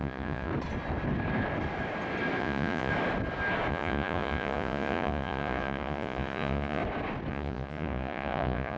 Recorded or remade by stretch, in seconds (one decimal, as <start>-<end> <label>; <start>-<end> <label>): 0.0-0.5 remade; 0.5-2.4 recorded; 2.4-2.9 remade; 2.9-3.7 recorded; 3.7-6.8 remade; 6.8-7.3 recorded; 7.3-8.8 remade